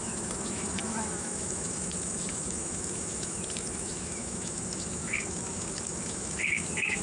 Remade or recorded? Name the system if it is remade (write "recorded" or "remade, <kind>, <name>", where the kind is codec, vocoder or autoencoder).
remade, autoencoder, DAC-VAE